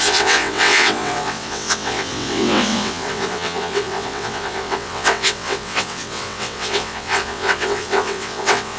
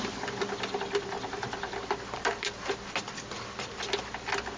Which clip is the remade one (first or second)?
first